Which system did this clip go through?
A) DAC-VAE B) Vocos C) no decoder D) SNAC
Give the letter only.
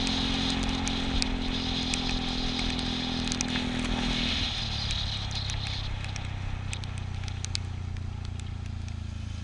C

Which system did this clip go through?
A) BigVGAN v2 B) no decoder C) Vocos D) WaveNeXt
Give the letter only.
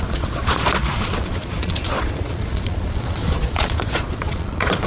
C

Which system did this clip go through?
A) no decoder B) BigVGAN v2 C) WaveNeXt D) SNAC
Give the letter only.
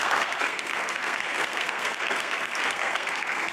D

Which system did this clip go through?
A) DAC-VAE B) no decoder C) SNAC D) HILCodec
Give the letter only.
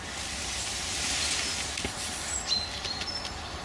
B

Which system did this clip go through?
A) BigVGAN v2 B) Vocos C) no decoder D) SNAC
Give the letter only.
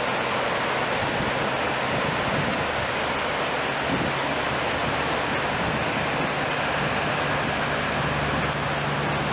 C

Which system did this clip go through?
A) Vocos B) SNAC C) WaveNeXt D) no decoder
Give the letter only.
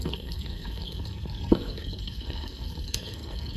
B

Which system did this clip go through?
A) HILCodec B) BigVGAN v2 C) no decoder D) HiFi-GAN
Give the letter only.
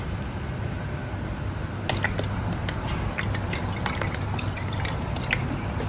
C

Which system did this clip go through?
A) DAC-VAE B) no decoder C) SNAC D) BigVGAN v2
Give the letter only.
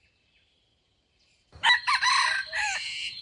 D